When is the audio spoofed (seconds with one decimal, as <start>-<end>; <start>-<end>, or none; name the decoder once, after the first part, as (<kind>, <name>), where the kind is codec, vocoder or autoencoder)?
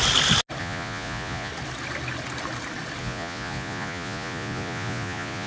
0.6-1.5 (vocoder, Vocos); 3.0-5.5